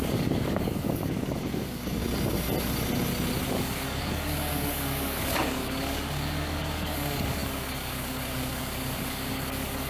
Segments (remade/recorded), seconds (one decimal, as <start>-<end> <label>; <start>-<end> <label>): 0.0-2.0 remade; 2.0-3.5 recorded; 3.5-9.9 remade